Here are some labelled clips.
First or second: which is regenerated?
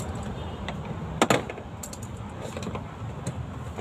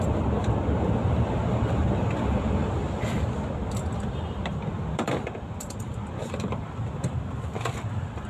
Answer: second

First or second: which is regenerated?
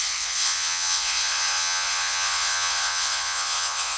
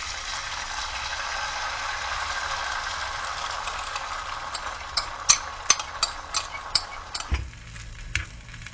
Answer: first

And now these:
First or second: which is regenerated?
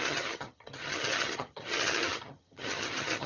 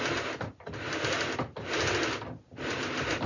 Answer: first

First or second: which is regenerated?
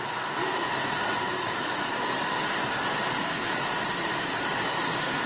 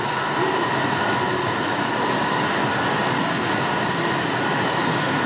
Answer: first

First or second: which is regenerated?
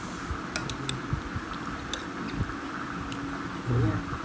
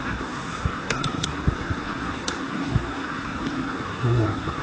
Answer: second